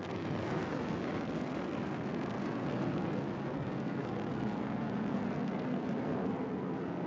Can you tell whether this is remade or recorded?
remade